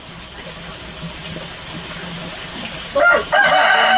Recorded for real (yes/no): yes